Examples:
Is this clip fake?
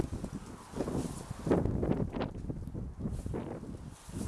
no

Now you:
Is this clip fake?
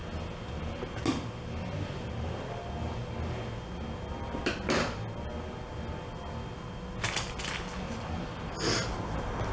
no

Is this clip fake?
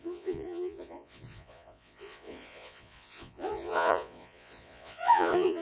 yes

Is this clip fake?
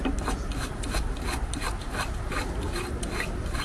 no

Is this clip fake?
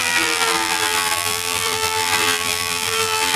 yes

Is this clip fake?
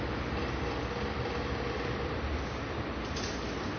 no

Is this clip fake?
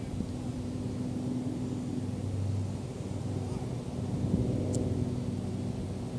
no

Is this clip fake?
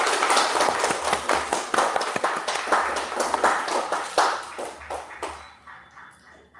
no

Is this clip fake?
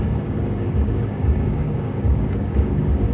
yes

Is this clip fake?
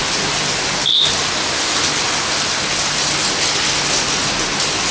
no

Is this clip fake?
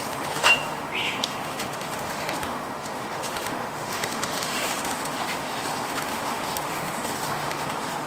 yes